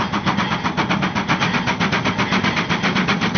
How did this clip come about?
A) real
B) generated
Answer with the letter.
A